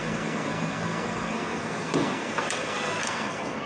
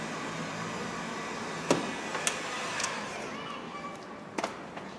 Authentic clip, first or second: second